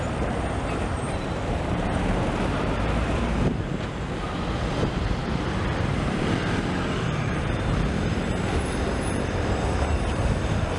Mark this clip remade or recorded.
remade